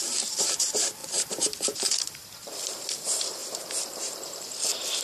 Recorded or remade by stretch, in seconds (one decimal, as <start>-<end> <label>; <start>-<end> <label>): 0.0-1.0 recorded; 1.0-2.0 remade; 2.0-3.4 recorded; 3.4-4.4 remade; 4.4-5.0 recorded